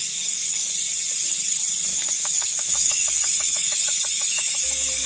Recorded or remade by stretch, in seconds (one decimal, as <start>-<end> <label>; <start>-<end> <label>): 0.0-0.7 remade; 0.7-1.9 recorded; 1.9-5.1 remade